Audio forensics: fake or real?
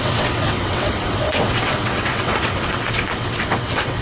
fake